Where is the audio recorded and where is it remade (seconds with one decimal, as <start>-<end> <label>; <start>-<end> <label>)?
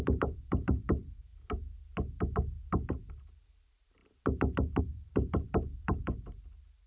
0.0-1.3 remade; 1.3-3.1 recorded; 3.1-4.0 remade; 4.0-4.8 recorded; 4.8-6.9 remade